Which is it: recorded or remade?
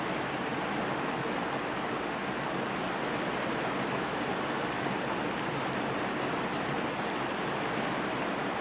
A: recorded